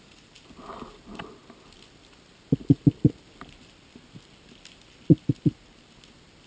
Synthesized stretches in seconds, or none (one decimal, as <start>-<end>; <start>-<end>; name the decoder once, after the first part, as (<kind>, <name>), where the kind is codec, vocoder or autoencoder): none